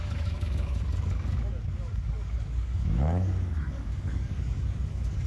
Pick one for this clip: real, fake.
fake